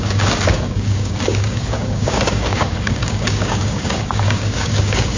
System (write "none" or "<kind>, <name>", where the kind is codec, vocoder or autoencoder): codec, DAC